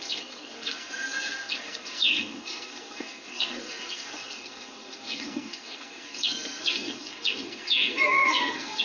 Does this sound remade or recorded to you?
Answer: remade